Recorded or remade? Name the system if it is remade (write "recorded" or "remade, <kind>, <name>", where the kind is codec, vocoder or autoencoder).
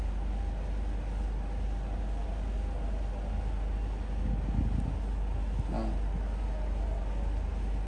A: recorded